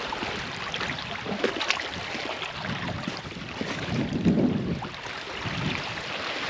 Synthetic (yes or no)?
no